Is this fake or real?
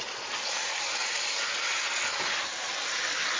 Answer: real